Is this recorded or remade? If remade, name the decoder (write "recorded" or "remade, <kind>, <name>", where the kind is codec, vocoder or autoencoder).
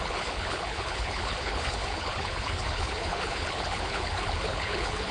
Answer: remade, codec, HILCodec